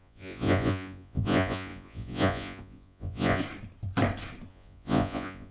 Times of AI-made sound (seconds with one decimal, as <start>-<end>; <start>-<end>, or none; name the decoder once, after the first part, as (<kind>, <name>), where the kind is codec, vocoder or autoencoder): 0.0-3.4 (vocoder, Vocos); 4.5-5.5